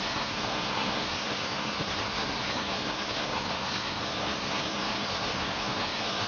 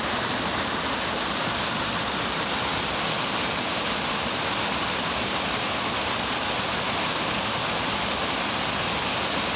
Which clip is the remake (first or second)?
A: first